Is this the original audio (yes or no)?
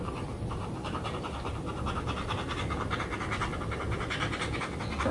yes